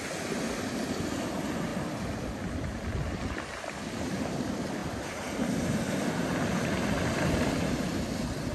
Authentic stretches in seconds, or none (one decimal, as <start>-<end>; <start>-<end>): 0.0-8.5